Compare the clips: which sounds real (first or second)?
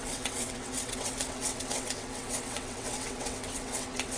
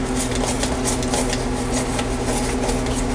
second